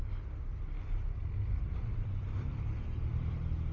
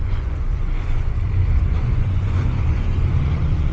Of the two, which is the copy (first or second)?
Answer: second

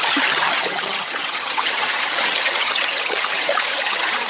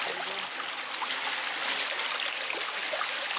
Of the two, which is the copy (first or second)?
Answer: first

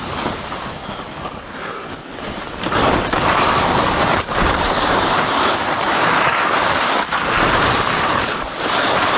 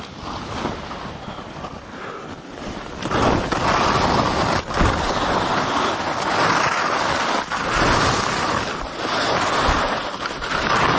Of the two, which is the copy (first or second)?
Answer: first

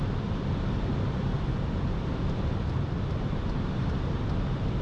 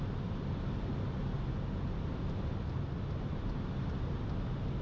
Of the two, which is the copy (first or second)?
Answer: first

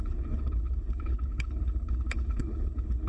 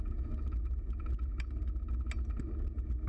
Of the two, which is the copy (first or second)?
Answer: first